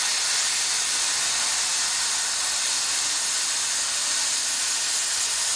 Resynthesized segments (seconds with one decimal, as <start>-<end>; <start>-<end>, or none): none